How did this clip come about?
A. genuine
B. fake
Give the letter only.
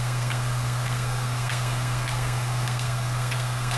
B